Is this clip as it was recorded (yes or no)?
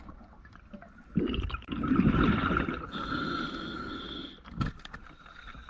yes